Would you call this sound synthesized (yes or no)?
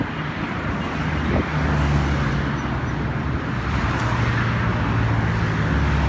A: no